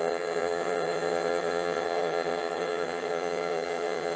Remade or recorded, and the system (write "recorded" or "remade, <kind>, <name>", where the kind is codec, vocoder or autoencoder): remade, vocoder, HiFi-GAN